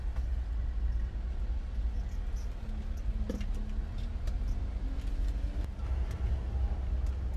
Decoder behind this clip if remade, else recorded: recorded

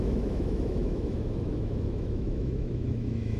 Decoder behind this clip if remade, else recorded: remade, autoencoder, DAC-VAE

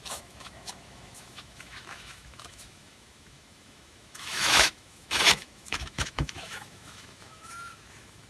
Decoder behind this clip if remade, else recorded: remade, autoencoder, DAC-VAE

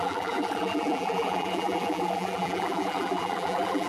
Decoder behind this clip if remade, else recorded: remade, vocoder, BigVGAN v2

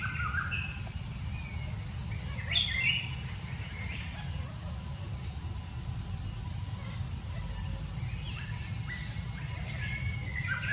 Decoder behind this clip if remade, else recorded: recorded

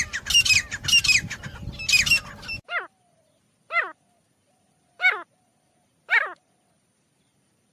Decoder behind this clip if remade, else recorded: recorded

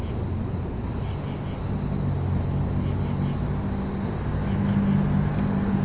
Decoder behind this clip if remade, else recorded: recorded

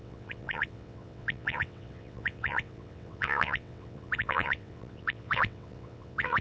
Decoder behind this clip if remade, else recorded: remade, vocoder, WaveNeXt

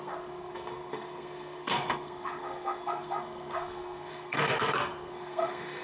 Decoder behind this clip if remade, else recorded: remade, codec, SNAC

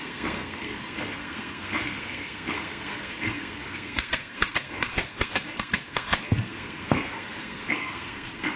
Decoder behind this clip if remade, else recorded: remade, codec, SNAC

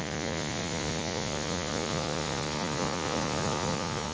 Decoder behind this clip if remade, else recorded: remade, vocoder, Vocos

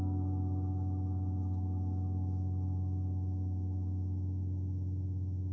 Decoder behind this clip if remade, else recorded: remade, autoencoder, DAC-VAE